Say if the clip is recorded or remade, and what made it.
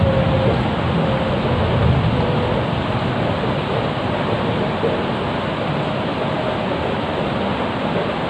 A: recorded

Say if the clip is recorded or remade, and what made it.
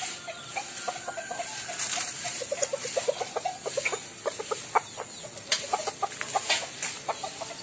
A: recorded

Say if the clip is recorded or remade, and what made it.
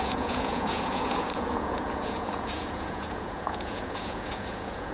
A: remade, vocoder, Vocos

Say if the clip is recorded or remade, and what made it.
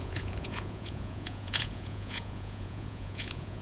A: remade, vocoder, Vocos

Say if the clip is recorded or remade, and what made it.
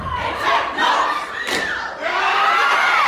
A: remade, vocoder, BigVGAN v2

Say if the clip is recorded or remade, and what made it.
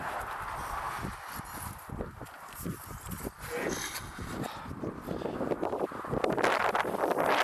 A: recorded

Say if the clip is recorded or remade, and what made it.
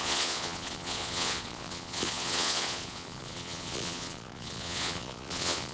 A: remade, vocoder, Vocos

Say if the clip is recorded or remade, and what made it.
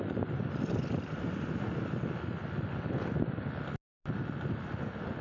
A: recorded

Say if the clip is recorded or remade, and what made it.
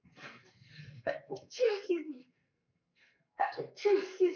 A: remade, codec, SNAC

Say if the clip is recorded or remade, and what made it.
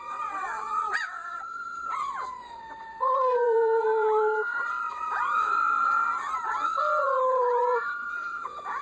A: remade, vocoder, WaveNeXt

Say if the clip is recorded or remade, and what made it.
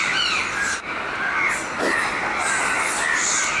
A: recorded